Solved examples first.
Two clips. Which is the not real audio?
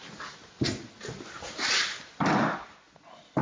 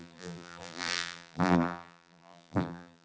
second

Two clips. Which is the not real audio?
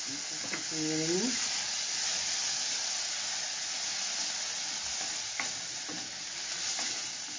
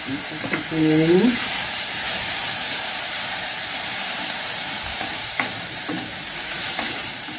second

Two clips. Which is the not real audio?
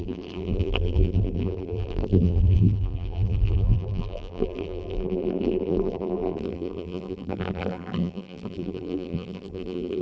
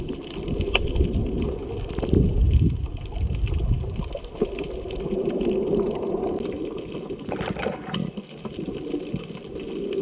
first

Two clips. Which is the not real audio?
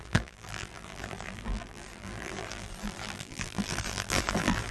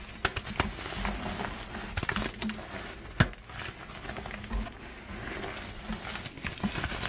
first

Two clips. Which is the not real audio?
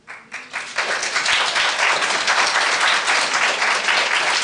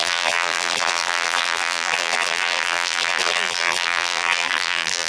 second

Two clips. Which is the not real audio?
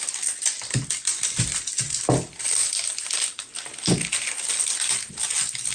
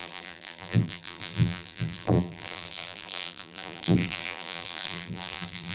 second